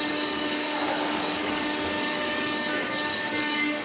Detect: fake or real fake